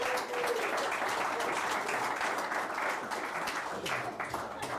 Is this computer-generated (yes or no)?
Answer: no